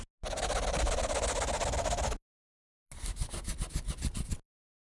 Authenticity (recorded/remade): recorded